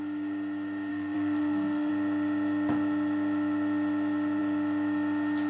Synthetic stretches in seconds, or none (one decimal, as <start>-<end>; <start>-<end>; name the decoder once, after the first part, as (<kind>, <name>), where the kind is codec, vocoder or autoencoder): 0.9-1.9 (codec, SNAC)

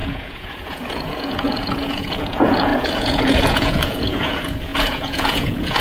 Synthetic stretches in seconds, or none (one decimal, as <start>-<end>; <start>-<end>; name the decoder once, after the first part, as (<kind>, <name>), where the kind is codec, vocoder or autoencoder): 0.0-5.8 (vocoder, Vocos)

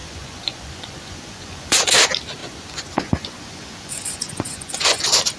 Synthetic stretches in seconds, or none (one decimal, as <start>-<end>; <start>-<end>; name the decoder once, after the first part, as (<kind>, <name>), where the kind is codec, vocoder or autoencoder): 0.0-1.9 (vocoder, Vocos); 2.4-5.0

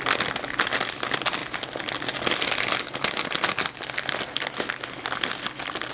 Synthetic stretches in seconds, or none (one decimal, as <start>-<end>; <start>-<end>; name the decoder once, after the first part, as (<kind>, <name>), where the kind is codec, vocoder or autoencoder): none

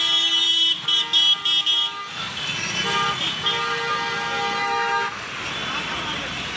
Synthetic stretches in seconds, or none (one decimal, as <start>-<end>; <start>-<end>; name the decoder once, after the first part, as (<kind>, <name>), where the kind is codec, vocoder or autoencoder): 4.6-5.3 (autoencoder, DAC-VAE)

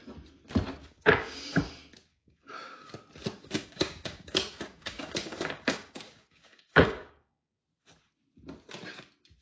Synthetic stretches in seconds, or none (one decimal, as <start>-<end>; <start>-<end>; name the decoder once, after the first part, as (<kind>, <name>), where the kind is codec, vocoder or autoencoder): 0.8-1.6 (codec, DAC); 2.1-2.9; 3.4-7.6

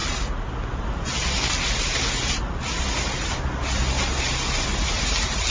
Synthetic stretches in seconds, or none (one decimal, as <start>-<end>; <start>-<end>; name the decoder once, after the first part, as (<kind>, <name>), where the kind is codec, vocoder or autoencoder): none